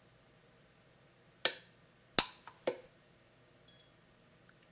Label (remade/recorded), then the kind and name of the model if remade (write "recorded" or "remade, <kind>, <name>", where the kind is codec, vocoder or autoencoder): recorded